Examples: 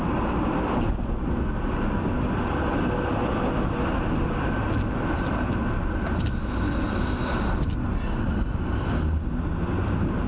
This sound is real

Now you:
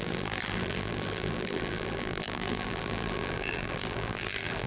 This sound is fake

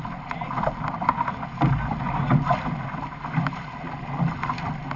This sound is real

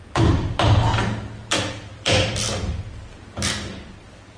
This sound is fake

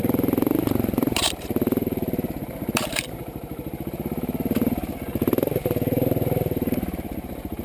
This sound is fake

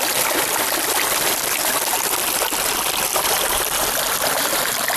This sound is fake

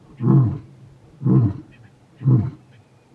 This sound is real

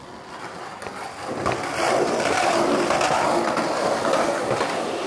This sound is real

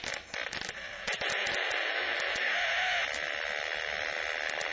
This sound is real